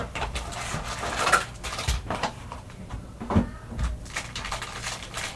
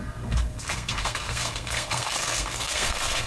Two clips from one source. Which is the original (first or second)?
first